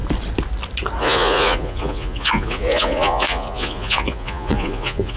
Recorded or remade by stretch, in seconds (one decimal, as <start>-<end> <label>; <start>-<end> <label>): 0.0-1.0 recorded; 1.0-5.2 remade